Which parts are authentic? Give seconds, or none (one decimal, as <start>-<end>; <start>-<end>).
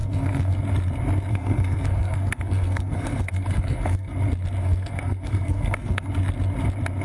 0.6-1.3; 4.1-4.6; 6.1-7.0